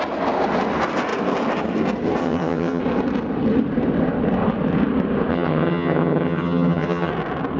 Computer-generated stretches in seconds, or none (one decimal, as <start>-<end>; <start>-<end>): 2.2-2.8; 5.3-7.1

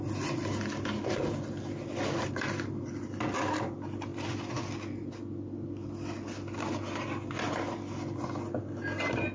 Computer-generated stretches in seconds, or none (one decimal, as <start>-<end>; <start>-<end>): none

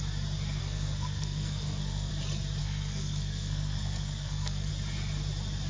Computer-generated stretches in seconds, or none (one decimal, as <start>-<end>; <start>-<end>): 0.6-2.1; 2.6-4.7